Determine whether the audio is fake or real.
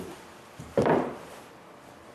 fake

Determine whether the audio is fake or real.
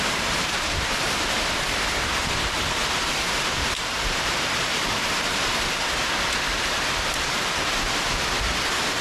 fake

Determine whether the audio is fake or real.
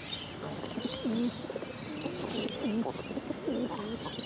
real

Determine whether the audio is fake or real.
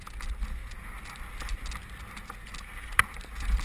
real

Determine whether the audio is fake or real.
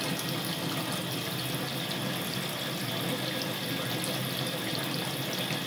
real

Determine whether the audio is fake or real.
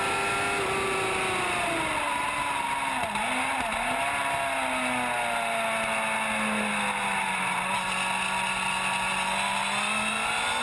real